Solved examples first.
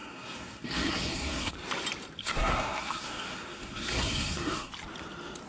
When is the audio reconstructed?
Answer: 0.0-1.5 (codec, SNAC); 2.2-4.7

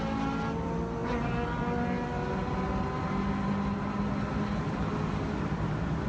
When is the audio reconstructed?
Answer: none

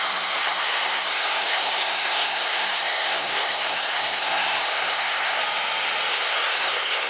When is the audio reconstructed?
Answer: 0.0-5.4 (codec, SNAC); 6.1-7.1

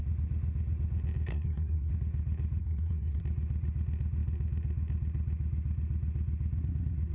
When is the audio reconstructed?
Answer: 1.3-1.9 (codec, SNAC); 2.6-3.2

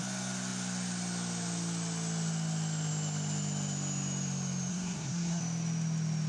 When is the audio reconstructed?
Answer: 4.7-5.4 (codec, SNAC)